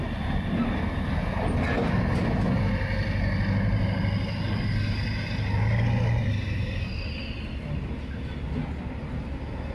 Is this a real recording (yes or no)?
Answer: yes